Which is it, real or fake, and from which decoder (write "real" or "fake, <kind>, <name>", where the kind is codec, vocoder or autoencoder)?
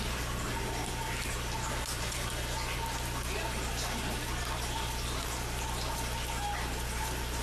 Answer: real